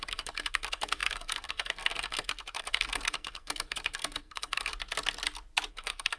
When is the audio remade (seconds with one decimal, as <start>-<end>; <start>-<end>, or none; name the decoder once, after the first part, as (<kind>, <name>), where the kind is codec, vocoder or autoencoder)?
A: 0.0-4.7 (codec, SNAC); 5.7-6.2